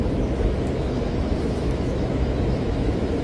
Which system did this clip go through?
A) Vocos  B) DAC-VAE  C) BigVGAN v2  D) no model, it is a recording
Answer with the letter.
B